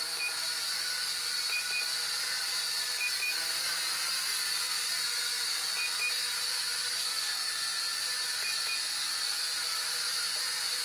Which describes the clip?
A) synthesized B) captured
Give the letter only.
A